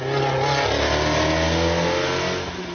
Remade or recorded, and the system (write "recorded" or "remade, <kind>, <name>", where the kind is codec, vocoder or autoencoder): recorded